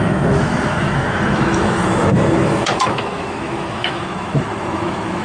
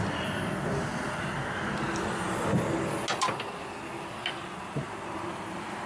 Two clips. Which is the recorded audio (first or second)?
second